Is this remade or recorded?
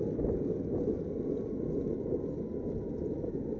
recorded